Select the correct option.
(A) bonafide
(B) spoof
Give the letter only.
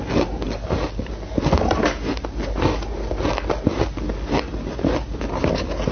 A